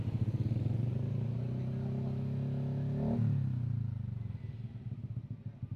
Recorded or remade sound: recorded